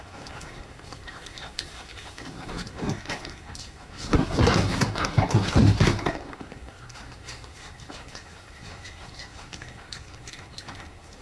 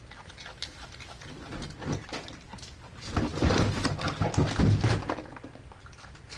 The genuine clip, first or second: second